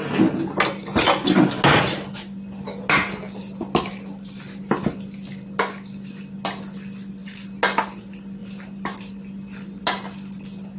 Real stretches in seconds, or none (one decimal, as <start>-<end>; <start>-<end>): 0.0-10.8